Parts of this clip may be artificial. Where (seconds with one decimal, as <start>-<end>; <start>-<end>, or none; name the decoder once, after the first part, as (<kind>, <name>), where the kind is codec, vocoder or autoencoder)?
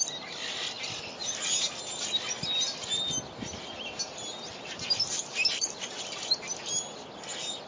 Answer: none